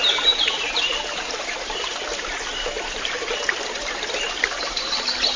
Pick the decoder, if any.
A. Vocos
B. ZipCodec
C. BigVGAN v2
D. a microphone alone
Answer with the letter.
D